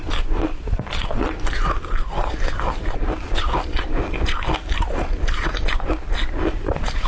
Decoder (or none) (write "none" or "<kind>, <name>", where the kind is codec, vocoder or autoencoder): none